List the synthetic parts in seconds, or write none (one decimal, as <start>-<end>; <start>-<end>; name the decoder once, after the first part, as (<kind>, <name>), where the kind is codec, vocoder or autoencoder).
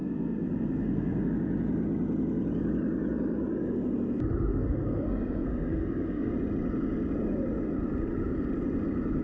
0.0-1.3 (codec, SNAC); 4.5-6.3